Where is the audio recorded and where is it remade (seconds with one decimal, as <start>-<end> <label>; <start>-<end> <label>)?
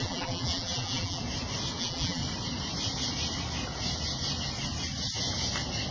0.0-1.2 remade; 1.2-1.8 recorded; 1.8-2.2 remade; 2.2-5.9 recorded